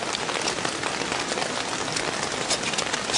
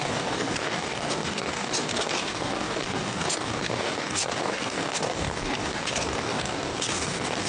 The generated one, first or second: second